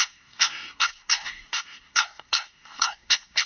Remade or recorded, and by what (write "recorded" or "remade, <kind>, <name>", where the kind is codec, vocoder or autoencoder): remade, codec, SNAC